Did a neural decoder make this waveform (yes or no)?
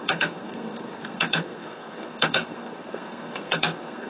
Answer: yes